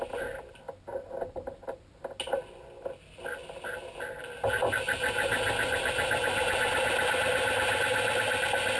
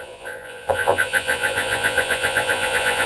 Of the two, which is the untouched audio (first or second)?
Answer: first